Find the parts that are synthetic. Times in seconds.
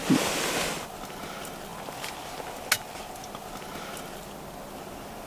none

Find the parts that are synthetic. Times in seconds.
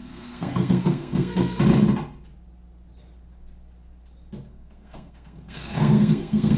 0.0-1.6 (codec, SNAC); 4.5-6.6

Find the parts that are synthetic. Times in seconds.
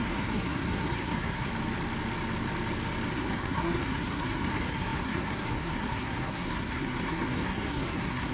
0.0-1.5 (codec, SNAC); 3.1-8.3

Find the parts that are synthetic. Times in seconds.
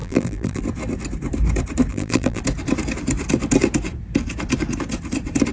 0.0-0.6 (vocoder, BigVGAN v2); 1.9-2.4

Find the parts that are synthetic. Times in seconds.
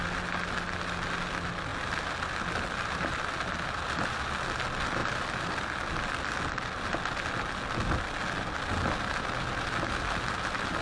none